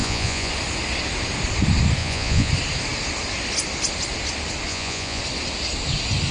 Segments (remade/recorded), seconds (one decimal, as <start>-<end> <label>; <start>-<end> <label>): 0.0-0.5 remade; 0.5-2.0 recorded; 2.0-2.5 remade; 2.5-4.7 recorded; 4.7-5.2 remade; 5.2-6.3 recorded